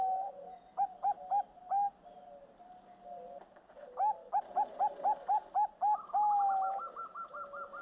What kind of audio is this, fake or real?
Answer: real